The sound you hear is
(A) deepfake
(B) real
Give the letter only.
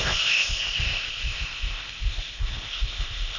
A